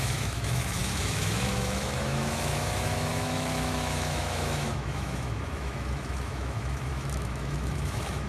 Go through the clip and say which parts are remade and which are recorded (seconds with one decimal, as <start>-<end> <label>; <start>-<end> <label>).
0.0-8.3 remade